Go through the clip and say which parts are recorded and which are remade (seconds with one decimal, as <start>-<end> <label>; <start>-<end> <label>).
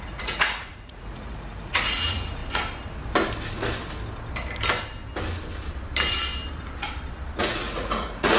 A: 0.0-2.4 remade; 2.4-7.4 recorded; 7.4-8.4 remade